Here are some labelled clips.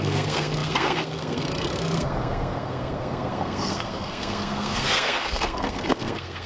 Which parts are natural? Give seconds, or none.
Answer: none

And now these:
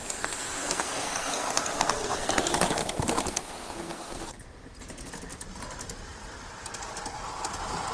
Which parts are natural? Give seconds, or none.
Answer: 4.4-7.9